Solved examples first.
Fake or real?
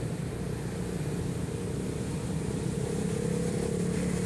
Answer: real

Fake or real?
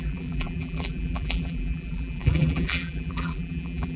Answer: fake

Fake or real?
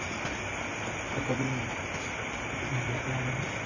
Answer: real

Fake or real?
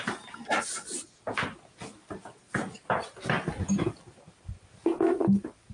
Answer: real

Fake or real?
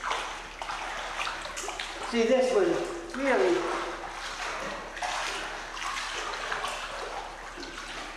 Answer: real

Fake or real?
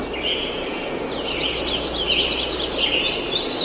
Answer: real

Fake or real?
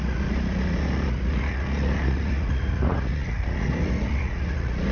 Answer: fake